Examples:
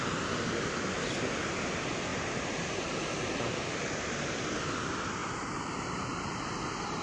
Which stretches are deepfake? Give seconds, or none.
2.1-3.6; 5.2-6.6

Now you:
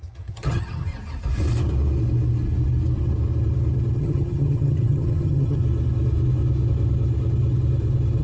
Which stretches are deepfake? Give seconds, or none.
0.0-0.9; 4.0-5.6

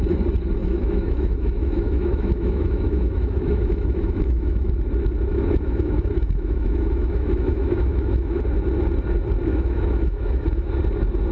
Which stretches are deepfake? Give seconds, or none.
0.6-4.7; 5.3-8.4; 9.5-10.7